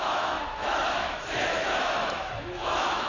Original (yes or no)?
no